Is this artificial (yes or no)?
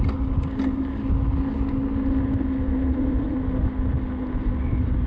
no